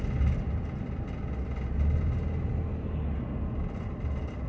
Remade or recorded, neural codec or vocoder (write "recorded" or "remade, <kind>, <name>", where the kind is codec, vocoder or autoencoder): recorded